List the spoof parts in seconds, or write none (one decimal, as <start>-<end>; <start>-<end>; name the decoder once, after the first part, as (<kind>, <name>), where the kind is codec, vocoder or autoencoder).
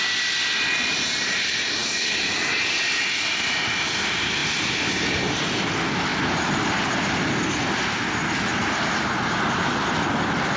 4.4-5.4 (vocoder, BigVGAN v2); 6.1-6.9